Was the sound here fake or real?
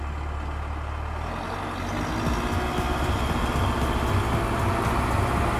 real